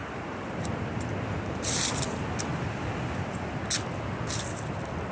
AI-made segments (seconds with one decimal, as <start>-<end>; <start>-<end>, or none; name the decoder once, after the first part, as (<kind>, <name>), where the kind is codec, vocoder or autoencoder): 0.0-1.1 (vocoder, BigVGAN v2); 2.5-3.6